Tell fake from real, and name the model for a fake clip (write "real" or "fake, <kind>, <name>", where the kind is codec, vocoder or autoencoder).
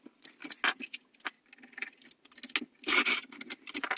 real